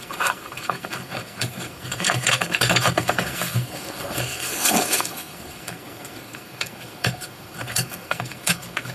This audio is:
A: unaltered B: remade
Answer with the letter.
B